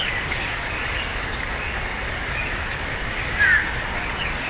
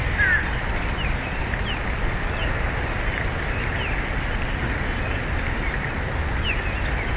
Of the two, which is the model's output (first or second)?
first